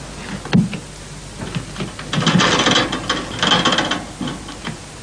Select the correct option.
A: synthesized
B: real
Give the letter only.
B